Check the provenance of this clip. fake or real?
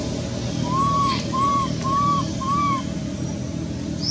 real